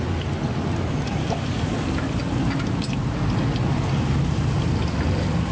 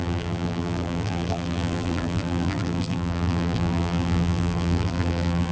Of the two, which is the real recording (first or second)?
first